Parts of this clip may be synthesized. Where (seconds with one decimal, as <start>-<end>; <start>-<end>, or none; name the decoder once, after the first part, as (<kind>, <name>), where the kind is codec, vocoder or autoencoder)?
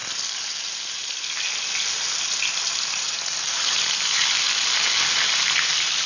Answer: none